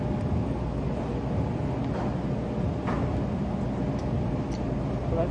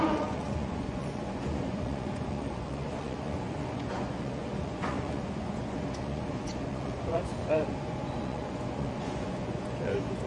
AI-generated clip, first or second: second